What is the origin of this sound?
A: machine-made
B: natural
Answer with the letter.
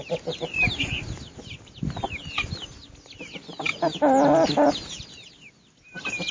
B